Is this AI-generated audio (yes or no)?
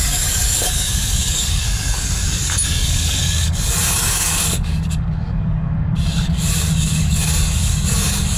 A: yes